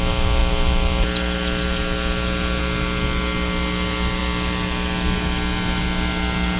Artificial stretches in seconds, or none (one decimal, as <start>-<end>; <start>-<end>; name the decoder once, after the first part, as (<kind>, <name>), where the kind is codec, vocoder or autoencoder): none